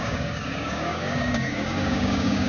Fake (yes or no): yes